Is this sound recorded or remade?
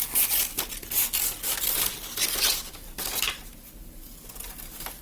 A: recorded